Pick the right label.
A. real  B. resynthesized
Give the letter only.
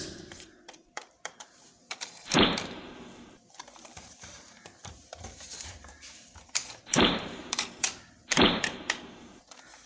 B